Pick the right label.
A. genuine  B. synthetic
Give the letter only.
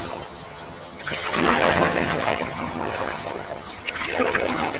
B